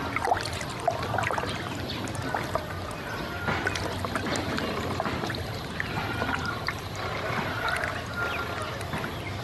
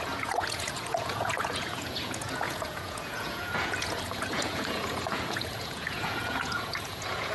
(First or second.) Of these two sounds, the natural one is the first